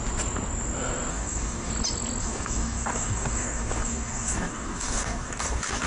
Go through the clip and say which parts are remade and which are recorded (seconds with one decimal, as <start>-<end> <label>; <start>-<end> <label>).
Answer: 0.0-1.1 recorded; 1.1-1.7 remade; 1.7-2.2 recorded; 2.2-5.9 remade